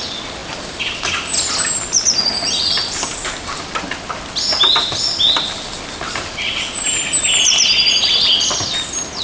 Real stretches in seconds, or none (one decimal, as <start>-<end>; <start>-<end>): 0.0-9.2